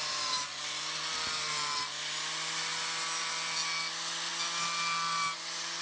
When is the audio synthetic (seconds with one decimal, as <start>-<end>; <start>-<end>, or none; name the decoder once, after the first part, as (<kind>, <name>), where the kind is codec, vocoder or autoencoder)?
none